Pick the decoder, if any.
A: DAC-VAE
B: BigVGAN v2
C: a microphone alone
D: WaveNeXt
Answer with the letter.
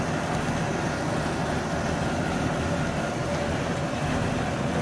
C